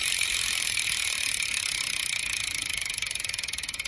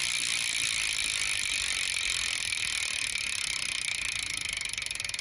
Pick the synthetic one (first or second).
first